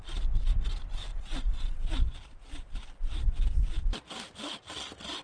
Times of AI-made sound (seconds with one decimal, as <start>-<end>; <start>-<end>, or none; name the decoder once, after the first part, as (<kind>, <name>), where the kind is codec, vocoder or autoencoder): none